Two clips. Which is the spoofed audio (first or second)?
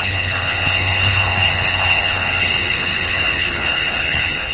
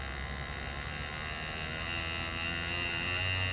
first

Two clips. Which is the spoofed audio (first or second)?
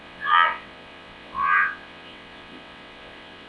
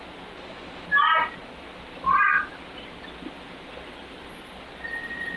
first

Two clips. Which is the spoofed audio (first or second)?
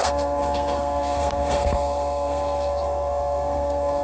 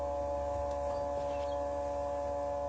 first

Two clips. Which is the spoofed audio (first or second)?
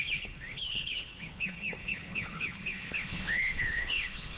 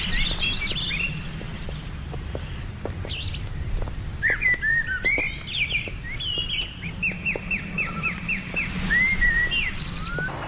first